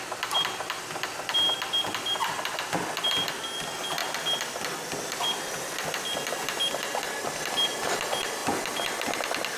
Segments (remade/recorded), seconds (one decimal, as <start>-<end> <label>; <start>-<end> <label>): 0.0-9.6 recorded